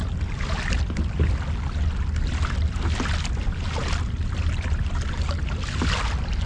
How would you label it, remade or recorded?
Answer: recorded